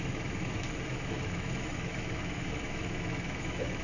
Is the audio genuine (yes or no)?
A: no